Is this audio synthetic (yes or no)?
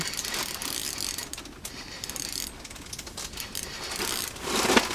no